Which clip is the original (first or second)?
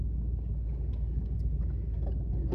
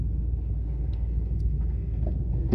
first